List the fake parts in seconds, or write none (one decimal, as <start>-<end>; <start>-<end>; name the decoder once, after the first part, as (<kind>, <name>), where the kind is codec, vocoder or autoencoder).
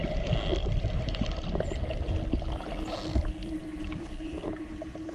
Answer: 3.1-5.1 (vocoder, BigVGAN v2)